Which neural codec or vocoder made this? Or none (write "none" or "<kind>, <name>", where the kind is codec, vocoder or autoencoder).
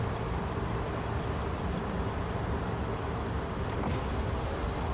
none